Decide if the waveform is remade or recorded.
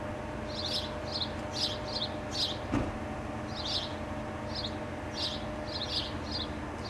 recorded